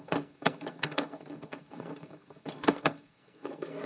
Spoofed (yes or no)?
yes